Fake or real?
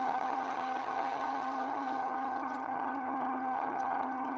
fake